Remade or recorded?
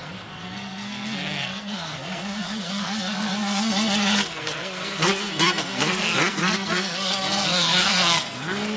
remade